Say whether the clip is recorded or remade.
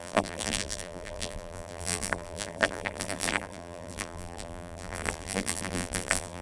remade